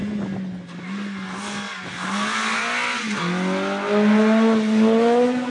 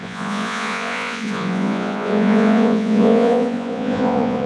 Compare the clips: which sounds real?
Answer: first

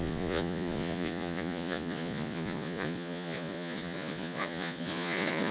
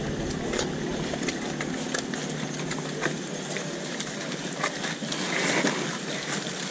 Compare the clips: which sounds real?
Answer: second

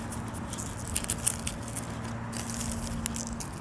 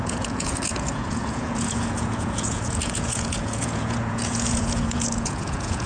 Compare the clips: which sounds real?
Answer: first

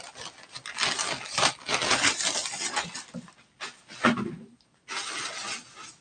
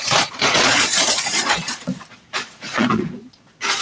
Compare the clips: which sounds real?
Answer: first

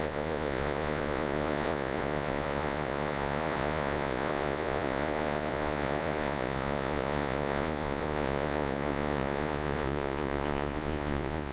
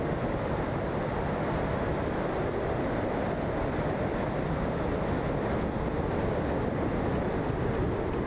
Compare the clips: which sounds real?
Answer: second